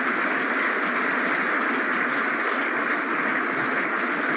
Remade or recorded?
recorded